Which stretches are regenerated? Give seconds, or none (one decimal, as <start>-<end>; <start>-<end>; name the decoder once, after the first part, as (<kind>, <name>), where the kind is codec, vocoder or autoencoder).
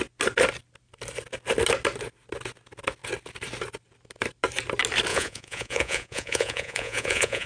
5.1-7.5 (vocoder, Vocos)